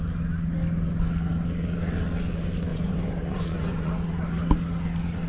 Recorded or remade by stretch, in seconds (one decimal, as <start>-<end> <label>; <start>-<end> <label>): 0.0-2.7 recorded; 2.7-3.9 remade; 3.9-5.3 recorded